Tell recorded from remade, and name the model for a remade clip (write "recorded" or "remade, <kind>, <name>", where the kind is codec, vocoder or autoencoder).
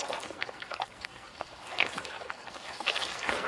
remade, codec, SNAC